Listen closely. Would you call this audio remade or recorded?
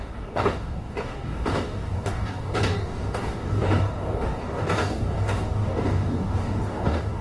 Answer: remade